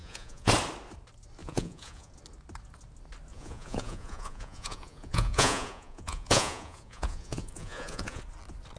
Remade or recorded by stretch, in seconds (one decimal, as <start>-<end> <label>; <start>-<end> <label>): 0.0-0.5 remade; 0.5-1.4 recorded; 1.4-2.1 remade; 2.1-3.3 recorded; 3.3-8.2 remade; 8.2-8.8 recorded